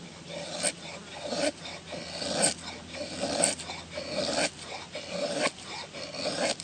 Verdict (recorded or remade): recorded